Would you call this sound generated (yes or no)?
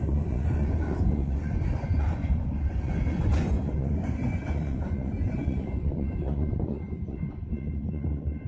yes